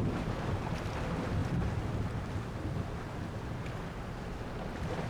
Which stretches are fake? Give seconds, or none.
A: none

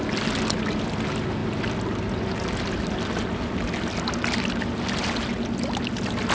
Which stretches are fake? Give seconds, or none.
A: none

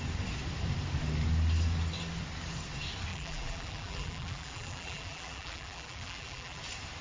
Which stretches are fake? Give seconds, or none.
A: 3.1-6.6 (vocoder, BigVGAN v2)